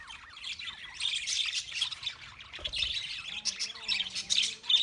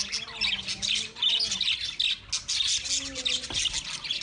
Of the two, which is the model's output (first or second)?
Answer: first